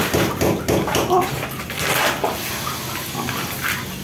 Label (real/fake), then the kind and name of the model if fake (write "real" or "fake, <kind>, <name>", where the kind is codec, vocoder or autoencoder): real